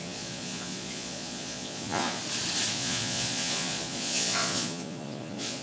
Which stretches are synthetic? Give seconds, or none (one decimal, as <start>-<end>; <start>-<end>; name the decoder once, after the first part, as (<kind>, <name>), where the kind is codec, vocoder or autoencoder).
0.0-2.2 (vocoder, Vocos); 2.7-5.6